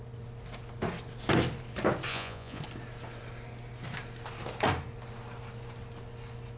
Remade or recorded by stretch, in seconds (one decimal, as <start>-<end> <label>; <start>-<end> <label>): 0.0-2.1 recorded; 2.1-2.6 remade; 2.6-6.6 recorded